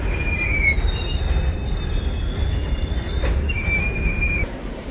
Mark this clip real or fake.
fake